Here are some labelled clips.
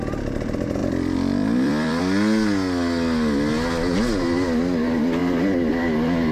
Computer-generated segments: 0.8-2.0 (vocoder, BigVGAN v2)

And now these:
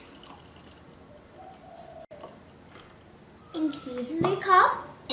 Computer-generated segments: none

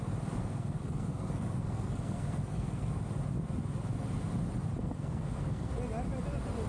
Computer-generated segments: 0.4-2.9 (codec, SNAC); 4.8-5.7

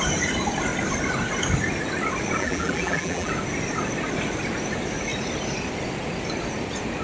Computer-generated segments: 2.4-3.3 (vocoder, BigVGAN v2)

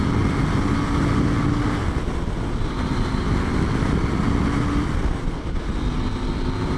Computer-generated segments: none

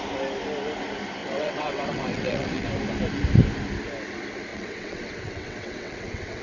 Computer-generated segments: 1.2-2.7 (vocoder, WaveNeXt); 4.5-6.4